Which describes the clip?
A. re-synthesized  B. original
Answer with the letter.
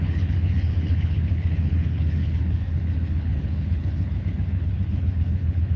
A